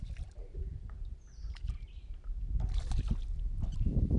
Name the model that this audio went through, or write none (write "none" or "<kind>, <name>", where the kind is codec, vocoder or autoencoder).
none